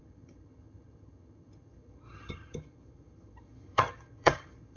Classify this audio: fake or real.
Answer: fake